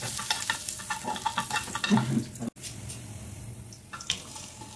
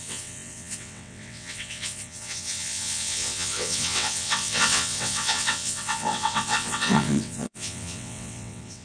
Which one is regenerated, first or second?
second